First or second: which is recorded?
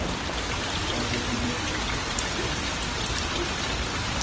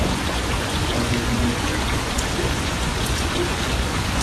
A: first